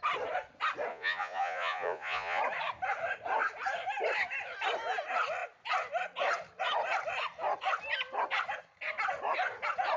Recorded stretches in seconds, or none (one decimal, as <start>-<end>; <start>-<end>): 0.0-0.9; 2.4-10.0